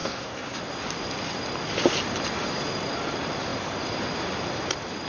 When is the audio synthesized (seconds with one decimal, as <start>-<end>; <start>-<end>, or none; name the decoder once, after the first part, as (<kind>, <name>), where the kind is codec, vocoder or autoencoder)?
0.0-0.6 (codec, SNAC)